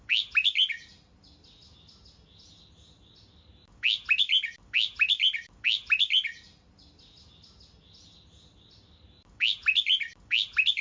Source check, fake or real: real